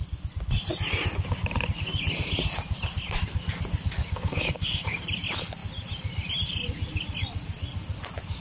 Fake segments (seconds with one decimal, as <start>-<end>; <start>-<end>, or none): 4.0-5.0